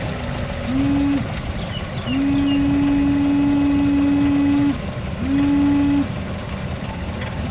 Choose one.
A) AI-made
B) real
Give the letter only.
B